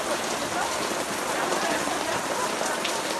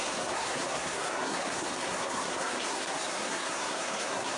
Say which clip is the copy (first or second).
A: second